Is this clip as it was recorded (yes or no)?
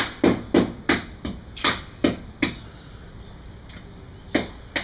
yes